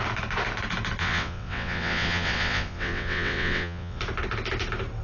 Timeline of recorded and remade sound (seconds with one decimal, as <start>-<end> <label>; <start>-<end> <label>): 0.0-1.0 recorded; 1.0-4.0 remade; 4.0-5.0 recorded